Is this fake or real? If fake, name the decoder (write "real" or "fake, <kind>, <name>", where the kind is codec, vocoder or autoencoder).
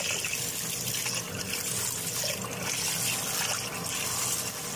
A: real